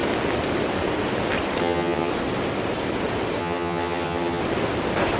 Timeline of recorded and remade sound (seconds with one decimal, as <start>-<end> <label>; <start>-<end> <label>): 0.0-1.6 recorded; 1.6-2.1 remade; 2.1-3.4 recorded; 3.4-4.4 remade; 4.4-5.2 recorded

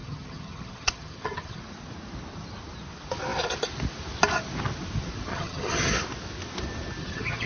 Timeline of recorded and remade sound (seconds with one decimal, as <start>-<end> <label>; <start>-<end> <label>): 0.0-1.6 remade; 1.6-5.3 recorded; 5.3-5.9 remade; 5.9-7.0 recorded; 7.0-7.5 remade

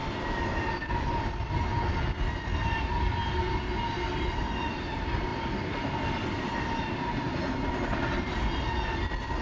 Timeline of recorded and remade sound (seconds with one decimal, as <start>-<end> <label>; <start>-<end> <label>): 0.0-9.4 recorded

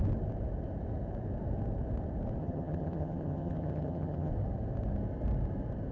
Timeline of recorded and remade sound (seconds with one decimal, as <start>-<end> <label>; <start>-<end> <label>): 0.0-2.4 recorded; 2.4-4.3 remade; 4.3-5.9 recorded